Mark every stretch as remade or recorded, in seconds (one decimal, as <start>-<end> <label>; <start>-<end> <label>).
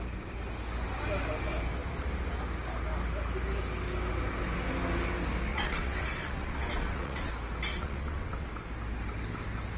0.0-5.5 recorded; 5.5-7.3 remade; 7.3-7.7 recorded; 7.7-8.5 remade; 8.5-9.8 recorded